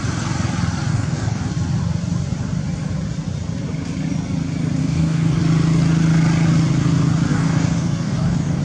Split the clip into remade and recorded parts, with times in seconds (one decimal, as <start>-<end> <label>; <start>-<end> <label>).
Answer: 0.0-0.9 recorded; 0.9-1.5 remade; 1.5-4.8 recorded; 4.8-5.4 remade; 5.4-7.3 recorded; 7.3-8.6 remade